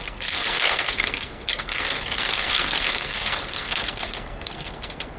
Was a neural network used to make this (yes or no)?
yes